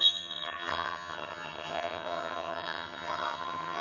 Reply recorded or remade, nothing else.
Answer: remade